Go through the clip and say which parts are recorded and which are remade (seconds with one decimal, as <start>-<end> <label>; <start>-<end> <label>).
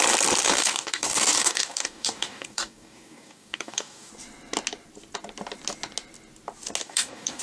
0.0-0.4 recorded; 0.4-4.1 remade; 4.1-6.8 recorded; 6.8-7.4 remade